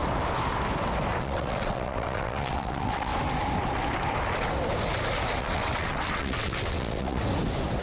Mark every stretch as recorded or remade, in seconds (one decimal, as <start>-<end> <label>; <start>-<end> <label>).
0.0-1.2 recorded; 1.2-3.1 remade; 3.1-5.4 recorded; 5.4-7.2 remade; 7.2-7.8 recorded